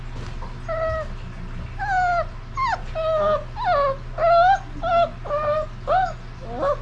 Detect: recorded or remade recorded